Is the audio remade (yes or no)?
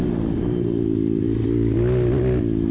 no